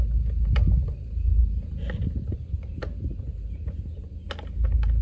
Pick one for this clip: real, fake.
real